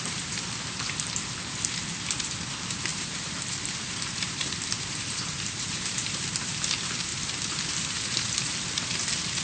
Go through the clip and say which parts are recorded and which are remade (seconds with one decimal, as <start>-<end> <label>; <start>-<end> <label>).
0.0-2.9 recorded; 2.9-6.5 remade; 6.5-7.1 recorded; 7.1-8.0 remade; 8.0-9.4 recorded